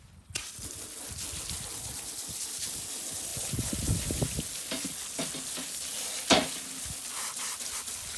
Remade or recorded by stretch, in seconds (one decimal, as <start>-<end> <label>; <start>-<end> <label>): 0.0-8.2 recorded